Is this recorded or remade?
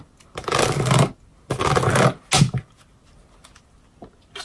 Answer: recorded